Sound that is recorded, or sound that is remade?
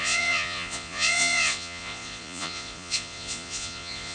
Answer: remade